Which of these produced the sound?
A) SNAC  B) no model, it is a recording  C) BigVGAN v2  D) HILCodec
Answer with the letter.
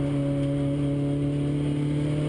B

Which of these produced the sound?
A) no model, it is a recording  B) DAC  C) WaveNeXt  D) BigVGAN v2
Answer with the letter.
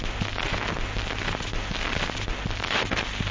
A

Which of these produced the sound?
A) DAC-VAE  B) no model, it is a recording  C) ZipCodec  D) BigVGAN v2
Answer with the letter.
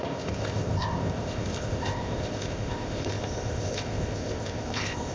C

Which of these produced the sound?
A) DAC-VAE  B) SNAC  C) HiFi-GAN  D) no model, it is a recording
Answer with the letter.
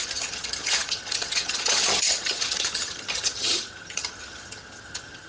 C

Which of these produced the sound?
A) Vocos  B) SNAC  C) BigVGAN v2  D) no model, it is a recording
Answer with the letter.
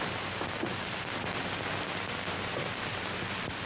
D